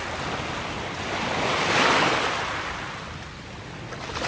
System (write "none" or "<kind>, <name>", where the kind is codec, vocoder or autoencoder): none